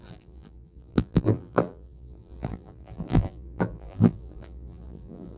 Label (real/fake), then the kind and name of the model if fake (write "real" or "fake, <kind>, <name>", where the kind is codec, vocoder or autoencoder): fake, vocoder, BigVGAN v2